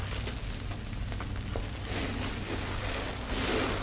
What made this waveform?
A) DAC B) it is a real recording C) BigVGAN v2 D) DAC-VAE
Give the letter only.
B